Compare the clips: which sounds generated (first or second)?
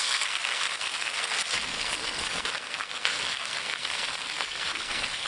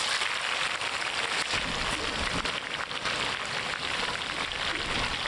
first